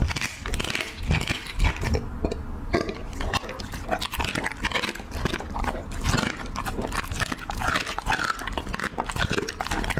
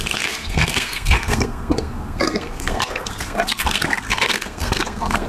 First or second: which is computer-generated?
second